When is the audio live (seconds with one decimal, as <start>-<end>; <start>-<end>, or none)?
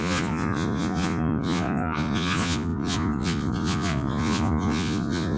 none